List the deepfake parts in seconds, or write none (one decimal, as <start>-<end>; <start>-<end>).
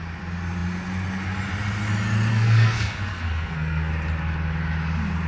2.3-3.9